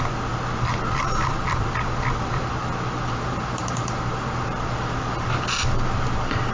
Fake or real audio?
real